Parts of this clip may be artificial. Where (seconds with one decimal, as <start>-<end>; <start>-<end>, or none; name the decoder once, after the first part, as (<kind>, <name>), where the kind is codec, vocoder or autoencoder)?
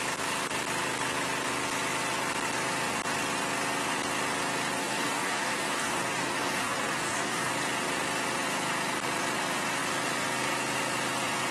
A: 4.8-7.5 (codec, DAC)